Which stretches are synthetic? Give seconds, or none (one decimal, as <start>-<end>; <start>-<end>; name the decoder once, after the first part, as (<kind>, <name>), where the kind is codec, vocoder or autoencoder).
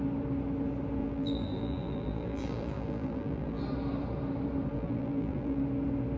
1.0-3.6 (vocoder, BigVGAN v2); 4.7-5.6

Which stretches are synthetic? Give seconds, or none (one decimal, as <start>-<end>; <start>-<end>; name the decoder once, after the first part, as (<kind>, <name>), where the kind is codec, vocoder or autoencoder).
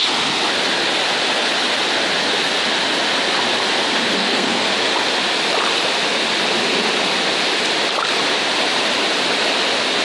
4.2-4.7 (codec, SNAC)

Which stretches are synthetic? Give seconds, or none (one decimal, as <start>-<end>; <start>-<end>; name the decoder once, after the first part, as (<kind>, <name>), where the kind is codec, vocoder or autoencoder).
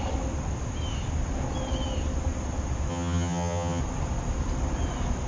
2.9-3.8 (vocoder, HiFi-GAN)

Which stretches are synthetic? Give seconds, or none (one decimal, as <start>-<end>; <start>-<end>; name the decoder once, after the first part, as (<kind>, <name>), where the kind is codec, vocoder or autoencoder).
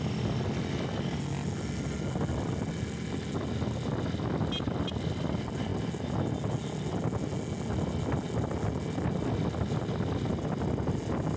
none